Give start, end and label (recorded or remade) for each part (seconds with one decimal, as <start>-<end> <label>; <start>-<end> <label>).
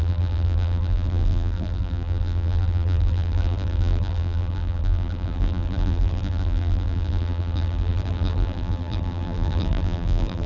0.0-10.5 remade